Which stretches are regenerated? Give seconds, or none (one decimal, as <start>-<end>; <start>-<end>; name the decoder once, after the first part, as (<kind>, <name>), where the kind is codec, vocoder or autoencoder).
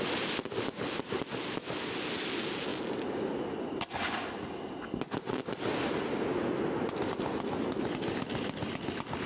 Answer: none